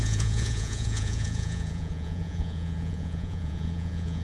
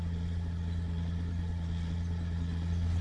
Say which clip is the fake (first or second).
first